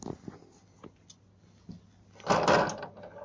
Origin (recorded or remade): recorded